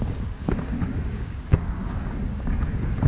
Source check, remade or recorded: remade